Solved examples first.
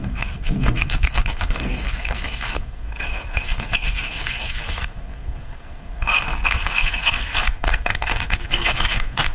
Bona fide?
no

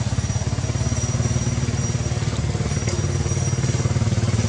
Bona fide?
yes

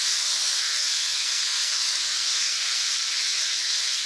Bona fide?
no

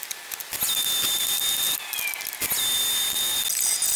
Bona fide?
yes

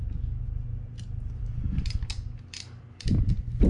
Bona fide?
yes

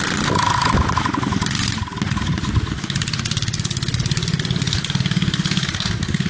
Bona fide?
yes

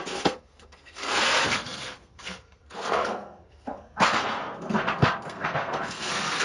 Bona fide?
no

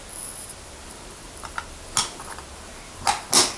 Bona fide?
yes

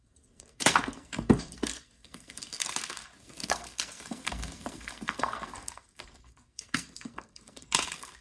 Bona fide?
no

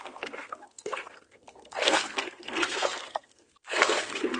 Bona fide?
no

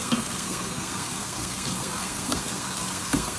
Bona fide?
no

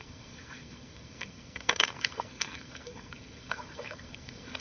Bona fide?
no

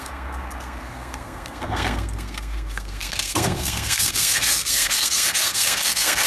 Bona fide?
no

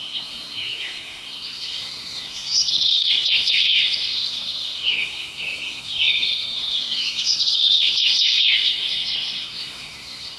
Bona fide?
no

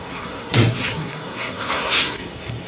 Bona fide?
no